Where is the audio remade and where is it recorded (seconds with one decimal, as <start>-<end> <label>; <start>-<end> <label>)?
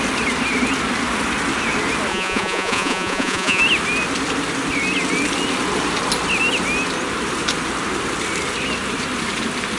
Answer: 0.0-2.1 recorded; 2.1-3.6 remade; 3.6-9.8 recorded